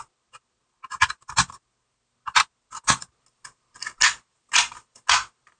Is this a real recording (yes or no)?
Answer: yes